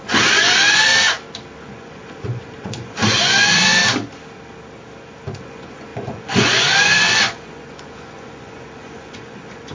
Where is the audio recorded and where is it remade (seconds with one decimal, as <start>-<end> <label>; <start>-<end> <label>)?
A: 0.0-0.9 remade; 0.9-1.6 recorded; 1.6-3.8 remade; 3.8-5.4 recorded; 5.4-9.7 remade